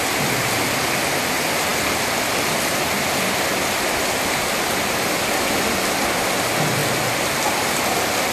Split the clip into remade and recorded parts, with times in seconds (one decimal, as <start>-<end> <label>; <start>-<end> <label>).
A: 0.0-1.7 remade; 1.7-3.8 recorded; 3.8-6.8 remade; 6.8-7.8 recorded; 7.8-8.3 remade